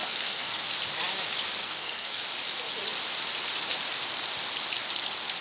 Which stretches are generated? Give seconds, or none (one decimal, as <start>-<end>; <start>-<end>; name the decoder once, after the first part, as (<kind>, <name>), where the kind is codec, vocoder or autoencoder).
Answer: 0.0-0.7 (codec, SNAC); 1.6-2.2